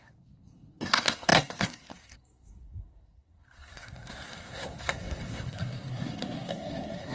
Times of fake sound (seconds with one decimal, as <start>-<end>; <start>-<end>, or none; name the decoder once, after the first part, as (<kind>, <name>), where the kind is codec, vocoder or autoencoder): 0.0-7.1 (codec, SNAC)